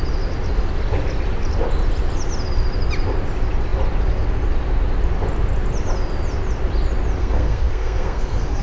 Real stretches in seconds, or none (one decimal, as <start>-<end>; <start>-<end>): 0.0-7.2